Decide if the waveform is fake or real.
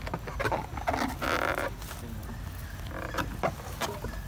real